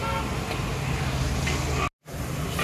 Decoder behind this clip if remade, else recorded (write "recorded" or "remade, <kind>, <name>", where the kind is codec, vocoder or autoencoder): recorded